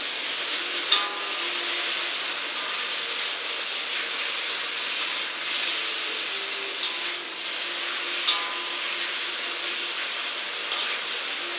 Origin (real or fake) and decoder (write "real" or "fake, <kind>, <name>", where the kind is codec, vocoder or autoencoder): real